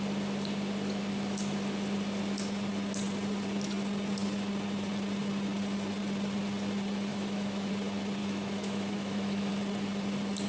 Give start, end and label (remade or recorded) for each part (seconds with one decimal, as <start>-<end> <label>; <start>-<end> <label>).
0.0-7.1 recorded; 7.1-7.7 remade; 7.7-8.2 recorded; 8.2-9.5 remade; 9.5-10.5 recorded